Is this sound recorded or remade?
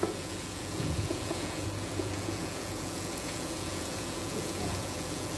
remade